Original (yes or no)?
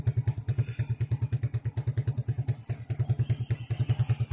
yes